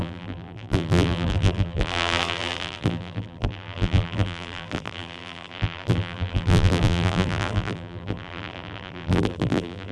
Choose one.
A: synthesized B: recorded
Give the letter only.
A